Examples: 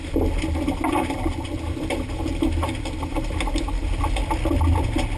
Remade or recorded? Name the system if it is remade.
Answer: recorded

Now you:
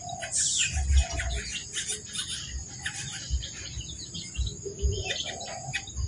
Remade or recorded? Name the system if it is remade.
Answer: recorded